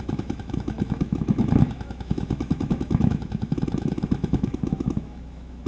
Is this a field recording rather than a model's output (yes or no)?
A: no